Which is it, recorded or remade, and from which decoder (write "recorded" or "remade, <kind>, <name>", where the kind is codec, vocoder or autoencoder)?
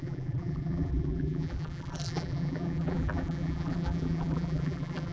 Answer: remade, vocoder, BigVGAN v2